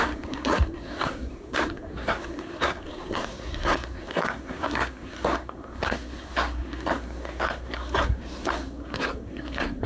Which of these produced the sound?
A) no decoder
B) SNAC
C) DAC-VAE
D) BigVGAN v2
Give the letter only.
B